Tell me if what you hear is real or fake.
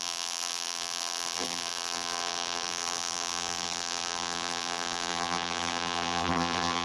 fake